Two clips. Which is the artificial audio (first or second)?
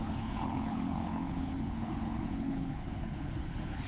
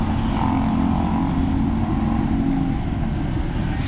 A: first